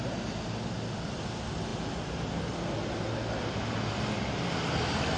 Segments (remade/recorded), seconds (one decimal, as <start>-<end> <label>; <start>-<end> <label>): 0.0-5.2 recorded